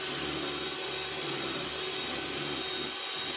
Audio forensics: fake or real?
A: real